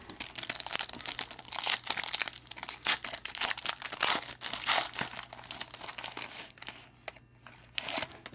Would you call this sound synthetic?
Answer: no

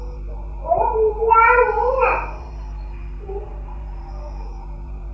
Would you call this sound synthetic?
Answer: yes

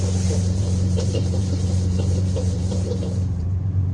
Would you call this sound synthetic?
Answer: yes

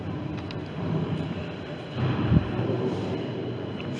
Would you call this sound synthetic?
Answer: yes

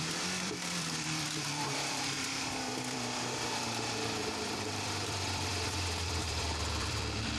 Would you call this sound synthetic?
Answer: yes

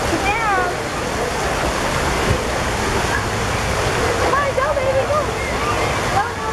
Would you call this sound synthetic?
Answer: no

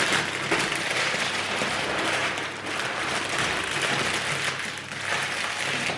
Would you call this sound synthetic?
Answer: yes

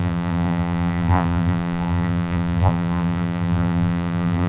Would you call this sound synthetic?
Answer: yes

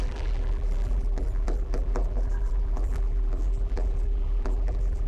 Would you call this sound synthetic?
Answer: yes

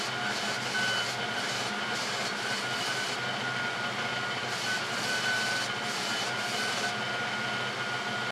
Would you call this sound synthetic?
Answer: no